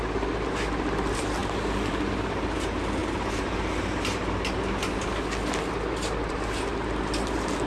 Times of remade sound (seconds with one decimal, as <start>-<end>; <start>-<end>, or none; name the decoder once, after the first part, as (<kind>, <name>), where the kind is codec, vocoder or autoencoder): none